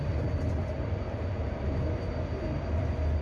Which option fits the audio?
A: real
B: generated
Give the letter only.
A